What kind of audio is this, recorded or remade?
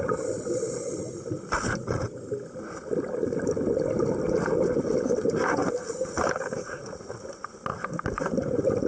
recorded